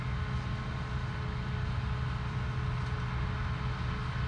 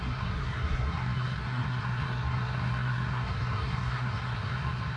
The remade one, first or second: second